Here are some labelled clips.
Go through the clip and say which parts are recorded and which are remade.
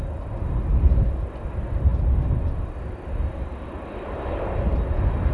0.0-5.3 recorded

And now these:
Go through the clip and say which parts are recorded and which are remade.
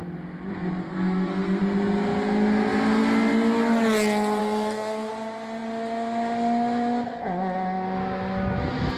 0.0-0.8 recorded; 0.8-1.6 remade; 1.6-4.4 recorded; 4.4-5.1 remade; 5.1-9.0 recorded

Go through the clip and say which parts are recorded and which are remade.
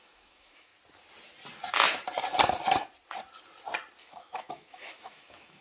0.0-0.7 remade; 0.7-4.0 recorded; 4.0-5.6 remade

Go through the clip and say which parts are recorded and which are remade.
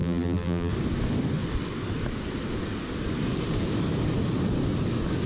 0.0-0.7 remade; 0.7-5.3 recorded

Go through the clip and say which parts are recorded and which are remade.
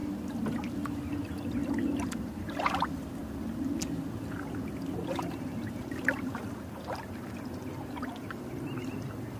0.0-2.0 recorded; 2.0-3.2 remade; 3.2-5.4 recorded; 5.4-9.4 remade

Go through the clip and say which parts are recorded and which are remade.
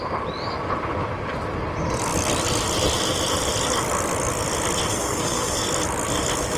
0.0-4.9 recorded; 4.9-5.6 remade; 5.6-6.6 recorded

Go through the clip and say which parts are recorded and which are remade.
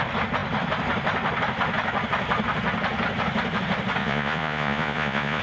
0.0-4.0 recorded; 4.0-5.4 remade